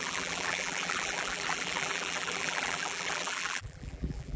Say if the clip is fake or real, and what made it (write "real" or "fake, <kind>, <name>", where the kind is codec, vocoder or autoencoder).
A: fake, vocoder, BigVGAN v2